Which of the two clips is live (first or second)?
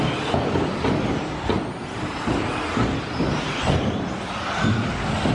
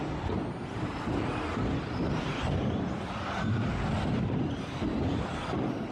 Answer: first